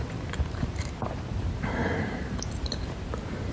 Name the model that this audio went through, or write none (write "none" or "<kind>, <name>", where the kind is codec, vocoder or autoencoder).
vocoder, BigVGAN v2